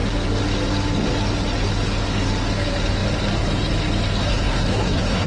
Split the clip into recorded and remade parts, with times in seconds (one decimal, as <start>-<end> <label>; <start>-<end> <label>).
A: 0.0-4.2 recorded; 4.2-5.3 remade